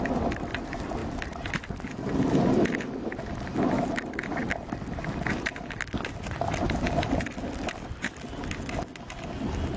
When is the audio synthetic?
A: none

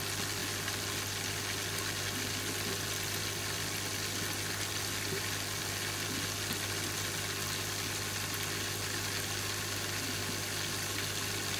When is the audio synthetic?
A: none

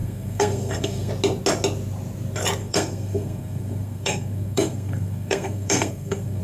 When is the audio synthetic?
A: 0.0-1.1 (codec, SNAC); 2.6-6.4

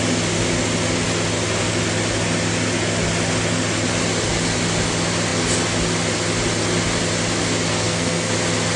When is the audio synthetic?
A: 7.7-8.3 (codec, SNAC)

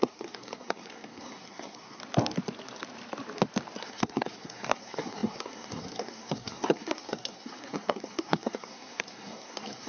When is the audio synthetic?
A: 0.0-2.0 (codec, SNAC); 3.8-9.9

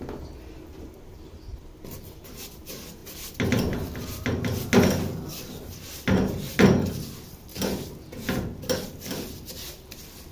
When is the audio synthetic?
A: none

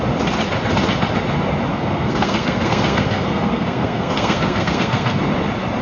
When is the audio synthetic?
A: 1.7-5.2 (codec, SNAC)

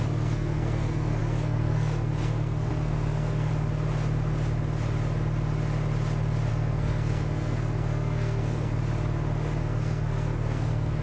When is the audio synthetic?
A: 0.0-3.5 (codec, SNAC); 6.5-8.7; 9.6-11.0